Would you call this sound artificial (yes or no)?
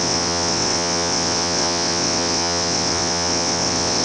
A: yes